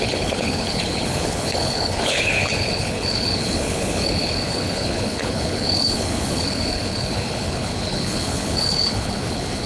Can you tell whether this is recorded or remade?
remade